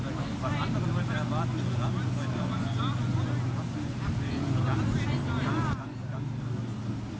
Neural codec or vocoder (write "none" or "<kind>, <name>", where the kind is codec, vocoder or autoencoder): none